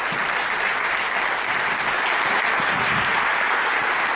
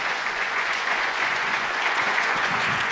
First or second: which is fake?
second